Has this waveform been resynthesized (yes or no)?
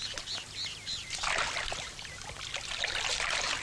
no